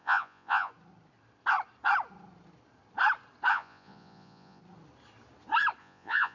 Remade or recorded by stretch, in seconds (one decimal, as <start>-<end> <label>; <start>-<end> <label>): 0.0-0.7 remade; 0.7-3.5 recorded; 3.5-4.6 remade; 4.6-5.8 recorded; 5.8-6.3 remade